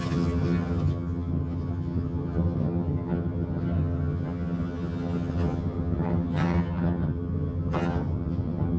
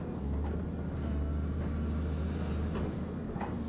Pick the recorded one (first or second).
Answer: second